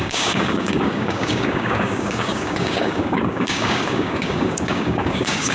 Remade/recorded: remade